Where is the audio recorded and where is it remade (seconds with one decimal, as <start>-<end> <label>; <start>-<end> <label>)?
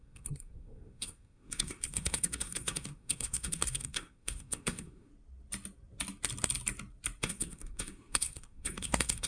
0.0-5.1 remade; 5.1-7.2 recorded; 7.2-9.3 remade